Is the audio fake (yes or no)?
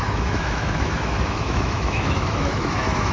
yes